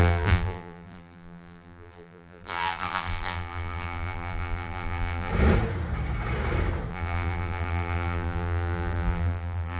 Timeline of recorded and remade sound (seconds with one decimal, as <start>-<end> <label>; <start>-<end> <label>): 0.0-5.3 remade; 5.3-6.9 recorded; 6.9-9.8 remade